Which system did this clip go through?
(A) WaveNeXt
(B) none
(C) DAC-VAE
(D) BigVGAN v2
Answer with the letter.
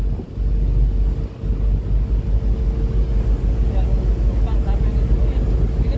B